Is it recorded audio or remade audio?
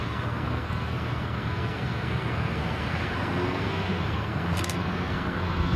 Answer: remade